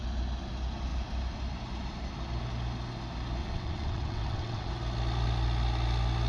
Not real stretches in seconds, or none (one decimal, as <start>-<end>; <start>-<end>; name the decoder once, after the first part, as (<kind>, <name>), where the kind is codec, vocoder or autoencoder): 3.4-4.7 (vocoder, WaveNeXt)